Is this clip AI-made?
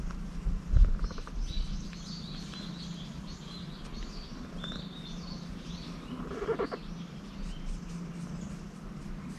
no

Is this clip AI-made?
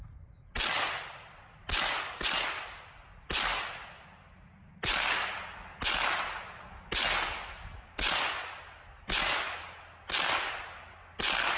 no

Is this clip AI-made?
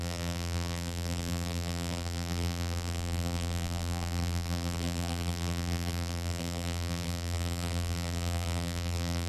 yes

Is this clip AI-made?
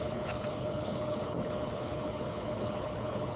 yes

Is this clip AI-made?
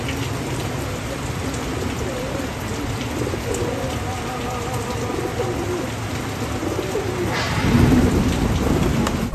no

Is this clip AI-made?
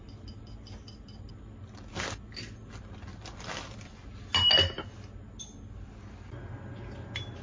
no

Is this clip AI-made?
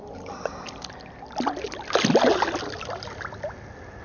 no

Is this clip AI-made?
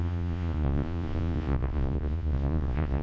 yes